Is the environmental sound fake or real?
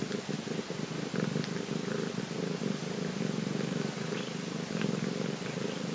real